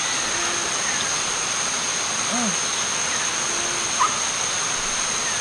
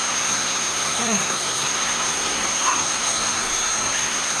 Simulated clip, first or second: second